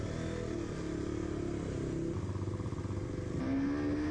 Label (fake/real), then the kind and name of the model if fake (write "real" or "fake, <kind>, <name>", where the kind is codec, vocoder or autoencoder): real